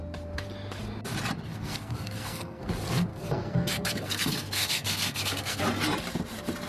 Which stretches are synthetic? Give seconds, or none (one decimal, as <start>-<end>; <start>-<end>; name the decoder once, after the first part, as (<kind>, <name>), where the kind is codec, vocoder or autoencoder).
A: 1.5-2.7 (codec, SNAC); 3.1-5.6